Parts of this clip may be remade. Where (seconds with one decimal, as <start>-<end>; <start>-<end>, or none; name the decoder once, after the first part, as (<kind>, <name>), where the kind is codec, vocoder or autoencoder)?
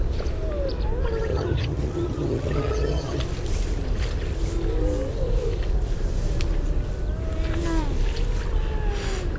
1.3-3.2 (vocoder, HiFi-GAN)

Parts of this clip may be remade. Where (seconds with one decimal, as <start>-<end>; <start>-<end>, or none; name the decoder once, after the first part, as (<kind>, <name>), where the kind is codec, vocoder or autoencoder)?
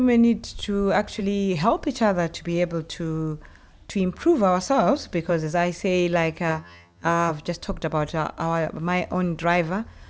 6.5-7.3 (vocoder, HiFi-GAN)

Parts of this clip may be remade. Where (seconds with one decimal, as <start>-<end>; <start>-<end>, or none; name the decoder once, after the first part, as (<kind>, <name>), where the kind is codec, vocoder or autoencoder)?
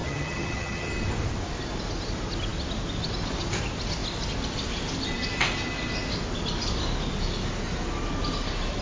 0.0-0.9 (vocoder, HiFi-GAN)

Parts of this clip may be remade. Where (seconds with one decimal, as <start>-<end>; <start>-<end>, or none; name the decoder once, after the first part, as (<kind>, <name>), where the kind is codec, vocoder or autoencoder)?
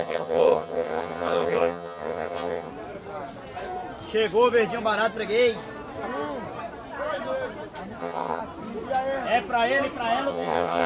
0.0-2.7 (vocoder, HiFi-GAN); 8.0-8.4; 10.3-10.9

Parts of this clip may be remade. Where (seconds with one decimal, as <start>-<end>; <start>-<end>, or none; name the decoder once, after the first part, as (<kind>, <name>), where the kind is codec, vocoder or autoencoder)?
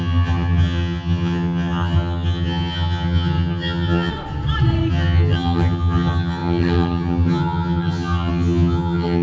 0.0-4.1 (vocoder, HiFi-GAN); 4.9-9.2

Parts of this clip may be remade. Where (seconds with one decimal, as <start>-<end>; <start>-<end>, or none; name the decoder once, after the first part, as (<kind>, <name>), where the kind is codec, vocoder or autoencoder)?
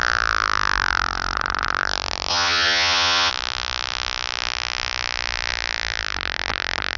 2.3-3.3 (vocoder, HiFi-GAN)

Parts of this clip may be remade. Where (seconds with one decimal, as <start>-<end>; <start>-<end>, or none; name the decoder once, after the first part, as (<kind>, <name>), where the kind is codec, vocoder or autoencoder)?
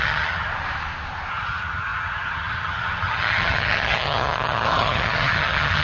0.0-0.5 (vocoder, HiFi-GAN); 1.3-5.8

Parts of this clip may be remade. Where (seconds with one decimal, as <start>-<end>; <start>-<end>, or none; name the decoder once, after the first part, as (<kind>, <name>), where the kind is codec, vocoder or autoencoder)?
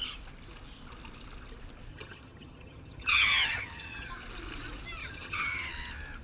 1.9-4.1 (vocoder, HiFi-GAN); 5.0-5.7